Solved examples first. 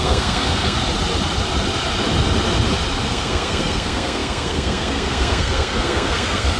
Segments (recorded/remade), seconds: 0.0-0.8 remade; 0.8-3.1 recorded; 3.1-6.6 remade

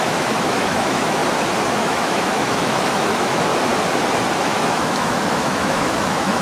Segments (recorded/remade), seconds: 0.0-1.2 remade; 1.2-1.7 recorded; 1.7-3.5 remade; 3.5-4.4 recorded; 4.4-6.4 remade

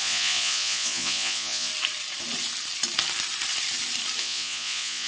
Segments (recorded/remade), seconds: 0.0-1.7 remade; 1.7-4.2 recorded; 4.2-5.1 remade

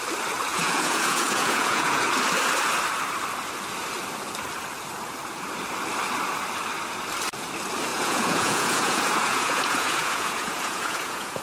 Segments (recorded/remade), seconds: 0.0-0.5 recorded; 0.5-2.1 remade; 2.1-7.9 recorded; 7.9-11.4 remade